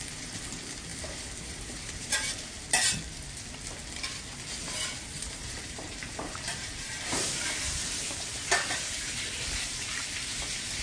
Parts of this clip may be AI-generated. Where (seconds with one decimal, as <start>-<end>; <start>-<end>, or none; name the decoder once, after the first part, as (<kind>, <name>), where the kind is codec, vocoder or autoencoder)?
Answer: 0.0-2.6 (vocoder, BigVGAN v2); 4.6-10.8